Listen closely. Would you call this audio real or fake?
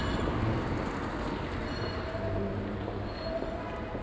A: real